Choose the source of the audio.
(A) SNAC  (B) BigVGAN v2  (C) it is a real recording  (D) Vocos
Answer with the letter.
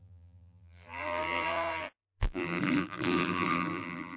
B